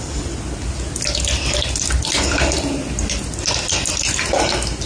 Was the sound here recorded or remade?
recorded